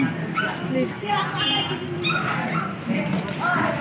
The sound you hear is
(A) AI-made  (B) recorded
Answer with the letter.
B